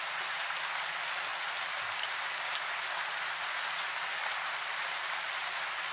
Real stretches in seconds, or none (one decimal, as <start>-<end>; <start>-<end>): 0.0-5.9